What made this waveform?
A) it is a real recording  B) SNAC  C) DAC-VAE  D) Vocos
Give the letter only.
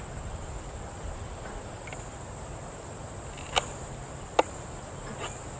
A